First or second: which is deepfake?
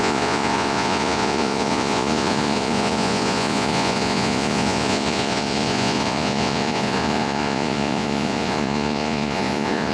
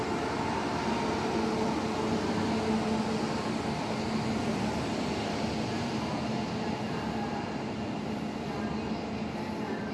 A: first